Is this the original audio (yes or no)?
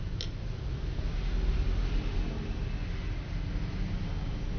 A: yes